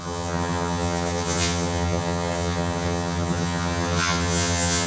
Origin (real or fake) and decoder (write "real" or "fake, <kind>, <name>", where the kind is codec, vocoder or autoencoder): fake, vocoder, HiFi-GAN